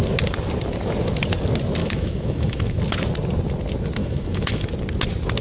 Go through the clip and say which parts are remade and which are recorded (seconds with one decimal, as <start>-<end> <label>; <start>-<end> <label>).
0.0-1.8 recorded; 1.8-2.8 remade; 2.8-4.0 recorded; 4.0-4.7 remade; 4.7-5.4 recorded